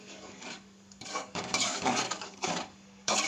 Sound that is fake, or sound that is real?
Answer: fake